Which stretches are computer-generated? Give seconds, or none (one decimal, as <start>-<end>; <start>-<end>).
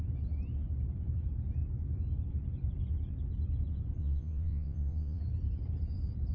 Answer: 4.0-5.2